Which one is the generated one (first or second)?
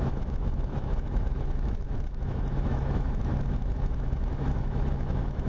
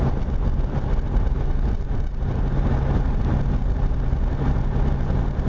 first